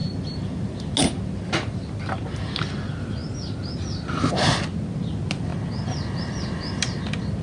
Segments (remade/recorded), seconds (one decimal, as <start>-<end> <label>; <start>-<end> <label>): 0.0-7.4 recorded